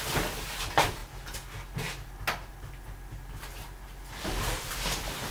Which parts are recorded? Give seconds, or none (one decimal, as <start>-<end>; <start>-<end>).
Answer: 0.0-5.3